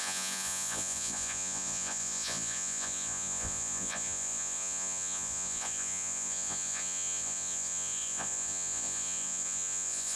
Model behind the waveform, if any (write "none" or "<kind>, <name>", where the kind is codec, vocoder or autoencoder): vocoder, Vocos